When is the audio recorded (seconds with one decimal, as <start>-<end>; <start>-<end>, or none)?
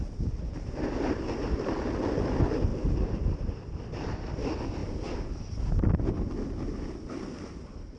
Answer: 0.0-8.0